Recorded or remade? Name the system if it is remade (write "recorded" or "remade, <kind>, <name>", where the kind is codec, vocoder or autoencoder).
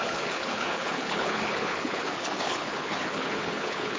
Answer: remade, codec, HILCodec